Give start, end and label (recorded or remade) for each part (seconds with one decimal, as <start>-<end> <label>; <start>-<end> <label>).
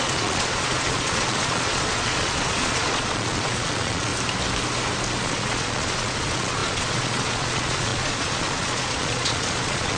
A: 0.0-4.1 remade; 4.1-5.2 recorded; 5.2-10.0 remade